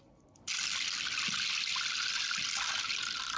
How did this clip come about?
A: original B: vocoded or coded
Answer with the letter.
A